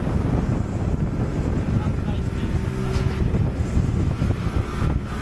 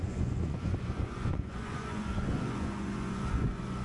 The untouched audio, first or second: first